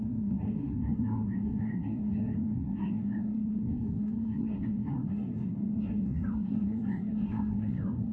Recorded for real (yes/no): no